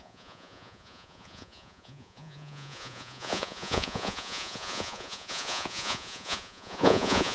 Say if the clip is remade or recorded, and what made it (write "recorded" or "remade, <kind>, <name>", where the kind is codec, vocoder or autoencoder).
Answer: remade, vocoder, Vocos